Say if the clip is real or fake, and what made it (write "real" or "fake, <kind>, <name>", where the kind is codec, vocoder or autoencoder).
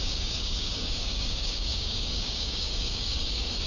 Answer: fake, codec, DAC